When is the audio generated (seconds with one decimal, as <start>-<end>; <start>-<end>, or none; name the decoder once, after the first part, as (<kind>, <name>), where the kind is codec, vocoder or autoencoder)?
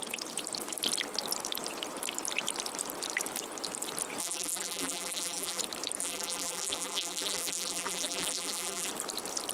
4.2-5.6 (vocoder, BigVGAN v2); 6.0-8.9